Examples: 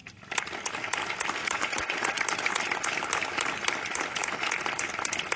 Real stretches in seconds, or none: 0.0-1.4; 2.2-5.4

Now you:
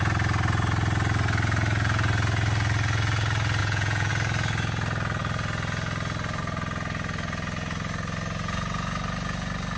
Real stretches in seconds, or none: 0.0-3.6; 4.1-9.8

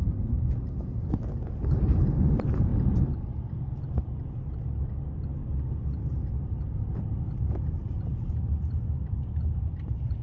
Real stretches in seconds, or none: 2.7-6.1

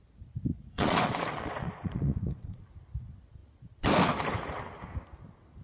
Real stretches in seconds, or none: 0.0-0.5; 2.6-5.6